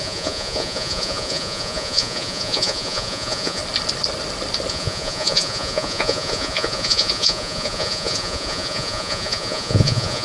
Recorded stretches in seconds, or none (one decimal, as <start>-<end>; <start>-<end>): 3.6-4.7